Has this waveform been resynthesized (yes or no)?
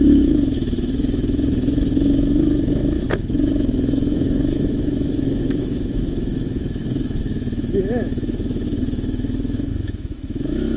yes